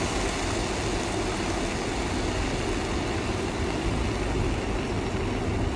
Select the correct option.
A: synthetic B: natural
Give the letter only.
B